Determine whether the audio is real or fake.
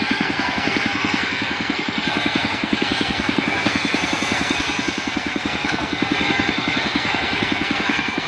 fake